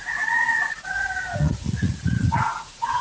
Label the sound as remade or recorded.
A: remade